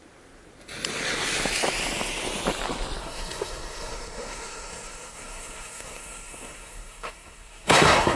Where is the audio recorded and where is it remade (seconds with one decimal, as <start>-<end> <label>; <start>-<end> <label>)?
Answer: 0.0-3.0 recorded; 3.0-8.2 remade